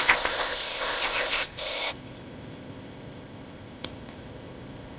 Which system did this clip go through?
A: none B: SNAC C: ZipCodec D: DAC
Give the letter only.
C